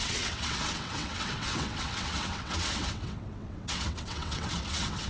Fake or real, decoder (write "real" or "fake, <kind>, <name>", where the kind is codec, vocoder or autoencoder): fake, vocoder, WaveNeXt